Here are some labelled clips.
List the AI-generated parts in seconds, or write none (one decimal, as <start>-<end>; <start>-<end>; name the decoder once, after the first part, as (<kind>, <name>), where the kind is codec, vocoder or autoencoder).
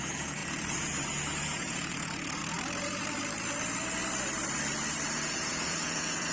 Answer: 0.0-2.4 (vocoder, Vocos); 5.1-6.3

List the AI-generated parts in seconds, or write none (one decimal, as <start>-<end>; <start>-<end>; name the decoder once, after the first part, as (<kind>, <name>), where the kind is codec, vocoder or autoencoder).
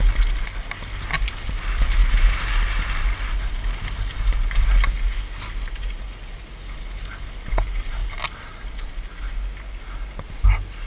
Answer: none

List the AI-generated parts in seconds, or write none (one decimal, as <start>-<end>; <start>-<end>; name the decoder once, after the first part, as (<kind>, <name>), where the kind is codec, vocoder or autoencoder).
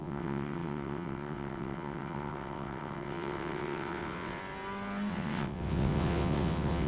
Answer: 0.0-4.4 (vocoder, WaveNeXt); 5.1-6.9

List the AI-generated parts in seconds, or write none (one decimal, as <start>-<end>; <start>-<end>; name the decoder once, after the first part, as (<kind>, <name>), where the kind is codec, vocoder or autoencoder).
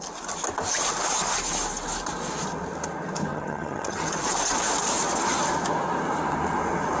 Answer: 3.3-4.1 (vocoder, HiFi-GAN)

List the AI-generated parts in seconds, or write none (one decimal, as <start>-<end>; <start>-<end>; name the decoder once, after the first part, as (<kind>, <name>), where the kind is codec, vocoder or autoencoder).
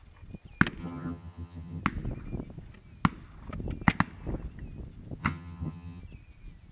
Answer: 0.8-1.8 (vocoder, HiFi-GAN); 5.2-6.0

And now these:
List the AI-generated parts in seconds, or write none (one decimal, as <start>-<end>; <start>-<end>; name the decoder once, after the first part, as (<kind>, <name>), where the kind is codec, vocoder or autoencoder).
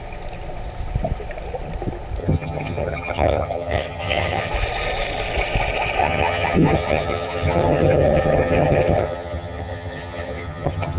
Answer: 2.2-4.5 (vocoder, HiFi-GAN); 6.0-11.0